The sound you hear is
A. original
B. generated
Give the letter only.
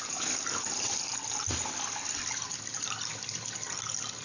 A